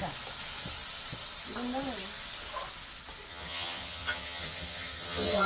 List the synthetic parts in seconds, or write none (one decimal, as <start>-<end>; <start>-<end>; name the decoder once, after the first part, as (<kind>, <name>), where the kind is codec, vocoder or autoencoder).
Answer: 3.3-5.5 (vocoder, HiFi-GAN)